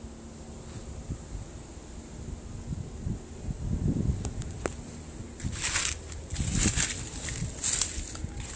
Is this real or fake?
real